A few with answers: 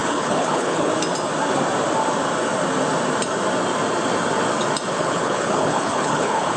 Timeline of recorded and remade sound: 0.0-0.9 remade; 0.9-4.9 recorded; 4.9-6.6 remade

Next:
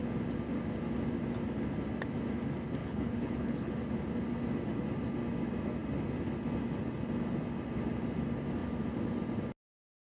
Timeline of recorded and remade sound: 0.0-2.8 recorded; 2.8-3.7 remade; 3.7-10.0 recorded

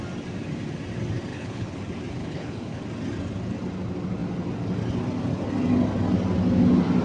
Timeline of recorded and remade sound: 0.0-1.3 recorded; 1.3-1.8 remade; 1.8-2.2 recorded; 2.2-2.8 remade; 2.8-7.0 recorded

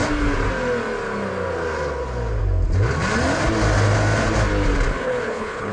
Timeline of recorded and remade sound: 0.0-4.9 recorded; 4.9-5.7 remade

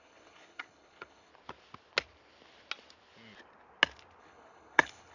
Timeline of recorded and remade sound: 0.0-1.3 remade; 1.3-4.2 recorded; 4.2-5.1 remade

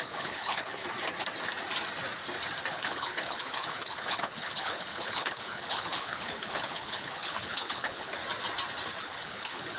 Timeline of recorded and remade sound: 0.0-0.8 remade; 0.8-2.7 recorded; 2.7-8.2 remade; 8.2-9.0 recorded; 9.0-9.8 remade

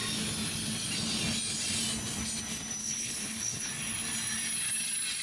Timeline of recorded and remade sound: 0.0-2.8 recorded; 2.8-3.7 remade; 3.7-5.2 recorded